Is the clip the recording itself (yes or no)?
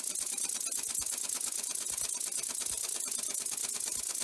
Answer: yes